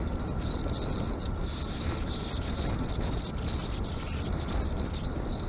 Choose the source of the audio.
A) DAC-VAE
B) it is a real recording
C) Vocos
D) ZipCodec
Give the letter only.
B